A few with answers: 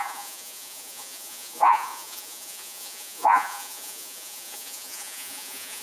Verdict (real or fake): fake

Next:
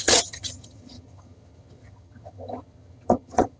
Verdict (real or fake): fake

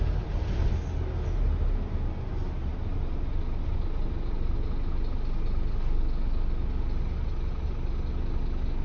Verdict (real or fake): real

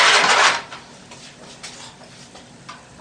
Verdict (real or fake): real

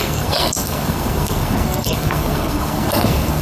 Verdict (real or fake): fake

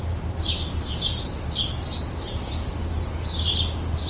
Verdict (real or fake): real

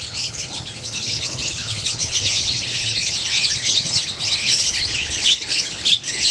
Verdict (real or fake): fake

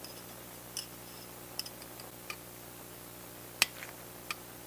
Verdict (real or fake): real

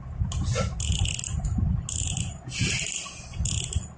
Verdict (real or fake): real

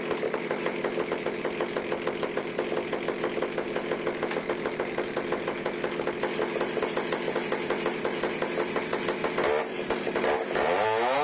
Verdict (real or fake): real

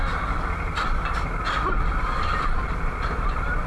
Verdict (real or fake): real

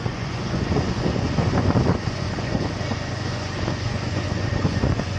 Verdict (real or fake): fake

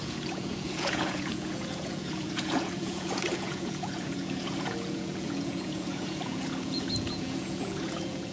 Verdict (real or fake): fake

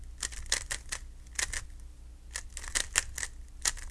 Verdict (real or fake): real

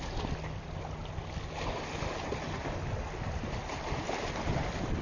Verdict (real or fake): real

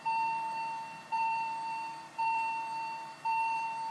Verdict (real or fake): fake